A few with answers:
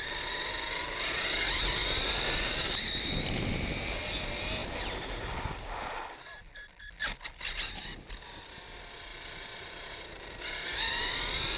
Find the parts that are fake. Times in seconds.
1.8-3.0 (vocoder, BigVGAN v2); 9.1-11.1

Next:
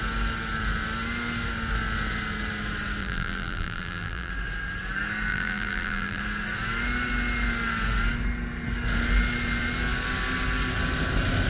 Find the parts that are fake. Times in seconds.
3.0-4.3 (vocoder, BigVGAN v2); 5.3-6.2

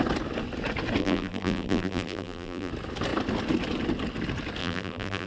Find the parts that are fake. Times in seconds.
1.0-2.7 (vocoder, BigVGAN v2); 4.6-5.3

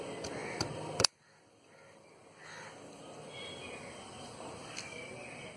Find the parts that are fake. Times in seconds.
0.4-3.6 (vocoder, BigVGAN v2)